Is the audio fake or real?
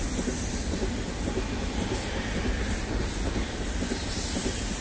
real